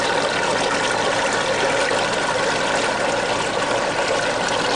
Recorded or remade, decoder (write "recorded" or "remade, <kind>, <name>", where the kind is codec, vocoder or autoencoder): recorded